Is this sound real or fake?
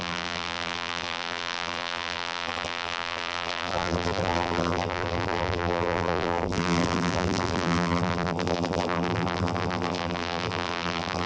fake